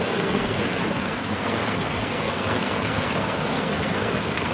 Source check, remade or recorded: remade